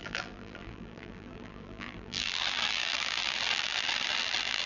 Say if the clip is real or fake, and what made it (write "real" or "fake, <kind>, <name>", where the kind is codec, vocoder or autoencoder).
fake, vocoder, BigVGAN v2